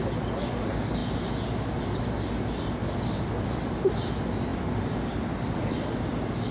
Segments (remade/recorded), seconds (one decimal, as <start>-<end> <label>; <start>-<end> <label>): 0.0-4.5 recorded; 4.5-5.9 remade; 5.9-6.5 recorded